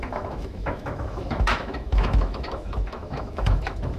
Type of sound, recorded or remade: remade